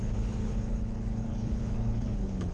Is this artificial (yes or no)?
yes